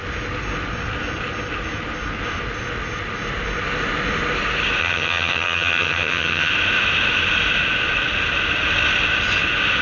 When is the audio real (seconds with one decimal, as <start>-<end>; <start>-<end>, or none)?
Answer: 0.0-4.8; 6.5-9.8

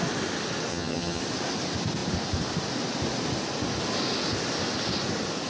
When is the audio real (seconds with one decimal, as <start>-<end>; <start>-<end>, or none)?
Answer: 0.0-0.7; 1.2-5.5

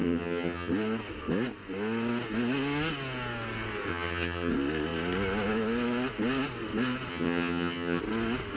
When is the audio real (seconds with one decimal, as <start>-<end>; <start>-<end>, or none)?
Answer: 0.7-3.9; 4.5-7.1; 8.0-8.6

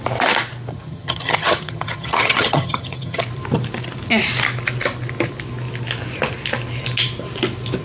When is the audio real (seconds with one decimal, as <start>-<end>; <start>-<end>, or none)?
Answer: 0.0-0.7; 3.2-7.8